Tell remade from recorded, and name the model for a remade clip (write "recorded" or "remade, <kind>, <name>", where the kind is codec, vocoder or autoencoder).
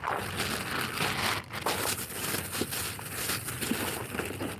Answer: recorded